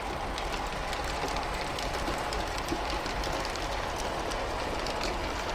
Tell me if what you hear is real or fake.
real